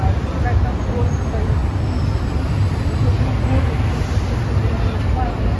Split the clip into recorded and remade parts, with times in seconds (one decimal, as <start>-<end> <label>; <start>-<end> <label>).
0.0-5.6 recorded

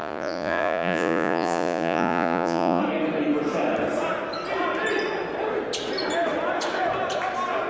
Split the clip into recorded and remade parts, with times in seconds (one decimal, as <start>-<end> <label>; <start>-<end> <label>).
0.0-2.8 remade; 2.8-7.7 recorded

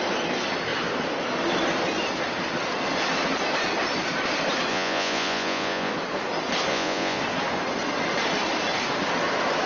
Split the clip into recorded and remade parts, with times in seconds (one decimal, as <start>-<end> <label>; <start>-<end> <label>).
0.0-4.7 recorded; 4.7-5.9 remade; 5.9-6.7 recorded; 6.7-7.2 remade; 7.2-9.7 recorded

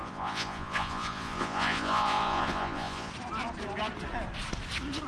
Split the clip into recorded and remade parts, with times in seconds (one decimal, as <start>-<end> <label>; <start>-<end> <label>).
0.0-3.1 remade; 3.1-5.1 recorded

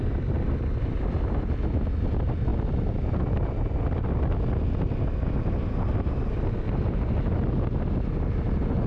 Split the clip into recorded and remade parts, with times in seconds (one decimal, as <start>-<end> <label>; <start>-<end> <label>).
0.0-8.9 recorded

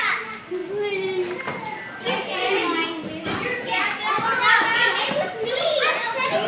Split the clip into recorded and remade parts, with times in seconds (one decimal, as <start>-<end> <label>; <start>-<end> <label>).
0.0-6.5 recorded

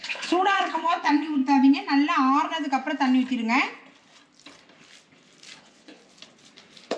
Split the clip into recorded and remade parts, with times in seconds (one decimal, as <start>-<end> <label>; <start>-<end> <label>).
0.0-1.4 remade; 1.4-5.6 recorded; 5.6-6.0 remade; 6.0-7.0 recorded